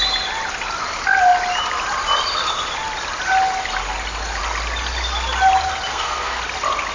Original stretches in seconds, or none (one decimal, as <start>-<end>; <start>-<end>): 0.0-5.9; 6.4-6.9